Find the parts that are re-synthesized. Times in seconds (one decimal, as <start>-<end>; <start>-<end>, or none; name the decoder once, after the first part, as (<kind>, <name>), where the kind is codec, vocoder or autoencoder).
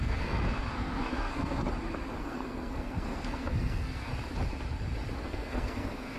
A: 0.0-1.6 (codec, SNAC); 2.2-4.1; 5.1-6.2